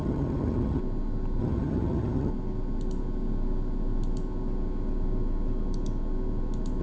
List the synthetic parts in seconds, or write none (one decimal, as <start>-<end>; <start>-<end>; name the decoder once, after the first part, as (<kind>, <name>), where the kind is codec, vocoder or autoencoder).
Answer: 0.0-0.8 (vocoder, HiFi-GAN); 1.4-2.3